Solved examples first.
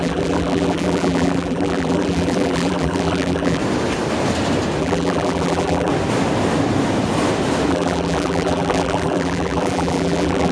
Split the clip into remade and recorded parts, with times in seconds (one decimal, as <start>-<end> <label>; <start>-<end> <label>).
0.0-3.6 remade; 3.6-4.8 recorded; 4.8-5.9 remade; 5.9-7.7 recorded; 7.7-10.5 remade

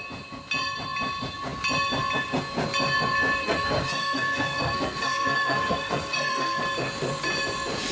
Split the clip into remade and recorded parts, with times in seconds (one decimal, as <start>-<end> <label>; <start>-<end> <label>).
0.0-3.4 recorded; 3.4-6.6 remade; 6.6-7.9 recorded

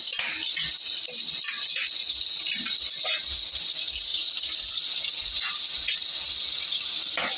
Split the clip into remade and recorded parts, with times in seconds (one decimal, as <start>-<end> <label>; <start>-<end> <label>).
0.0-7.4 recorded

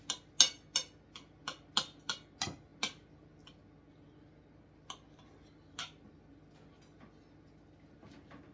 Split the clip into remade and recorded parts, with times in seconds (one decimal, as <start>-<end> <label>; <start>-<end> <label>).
0.0-8.5 recorded